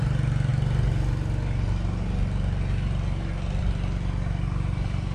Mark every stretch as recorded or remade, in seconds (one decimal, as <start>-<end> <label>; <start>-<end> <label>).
0.0-5.1 recorded